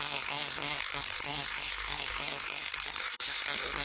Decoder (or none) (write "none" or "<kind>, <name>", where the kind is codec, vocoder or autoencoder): codec, SNAC